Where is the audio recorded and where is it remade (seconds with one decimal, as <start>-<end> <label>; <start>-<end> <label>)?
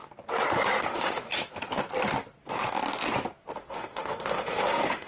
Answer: 0.0-0.8 recorded; 0.8-1.3 remade; 1.3-3.6 recorded; 3.6-5.1 remade